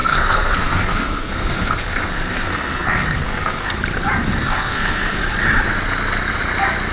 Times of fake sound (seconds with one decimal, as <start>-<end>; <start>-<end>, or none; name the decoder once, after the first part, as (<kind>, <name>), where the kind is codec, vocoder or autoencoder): 0.0-3.7 (codec, SNAC); 4.4-5.2